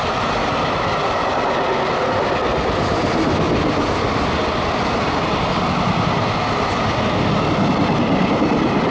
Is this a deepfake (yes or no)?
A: no